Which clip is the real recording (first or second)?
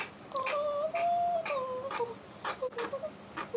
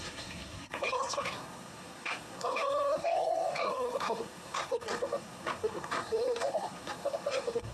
first